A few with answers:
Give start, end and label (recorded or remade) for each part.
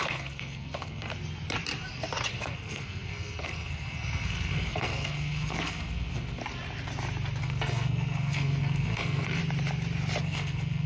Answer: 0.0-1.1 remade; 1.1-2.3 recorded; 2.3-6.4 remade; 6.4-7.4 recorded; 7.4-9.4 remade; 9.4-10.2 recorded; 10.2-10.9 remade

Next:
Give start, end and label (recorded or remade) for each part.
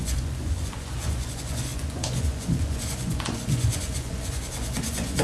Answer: 0.0-5.2 remade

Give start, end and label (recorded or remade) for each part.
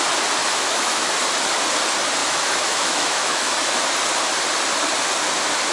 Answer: 0.0-0.4 recorded; 0.4-1.1 remade; 1.1-2.2 recorded; 2.2-3.5 remade; 3.5-5.7 recorded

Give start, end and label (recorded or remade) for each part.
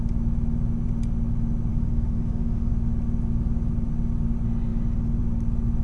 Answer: 0.0-1.7 recorded; 1.7-2.7 remade; 2.7-5.8 recorded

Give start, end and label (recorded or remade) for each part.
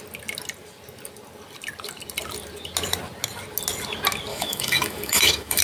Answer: 0.0-4.3 recorded; 4.3-5.6 remade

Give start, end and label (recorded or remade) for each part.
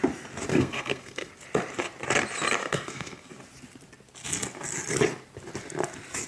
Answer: 0.0-0.5 recorded; 0.5-1.3 remade; 1.3-2.6 recorded; 2.6-3.3 remade; 3.3-6.3 recorded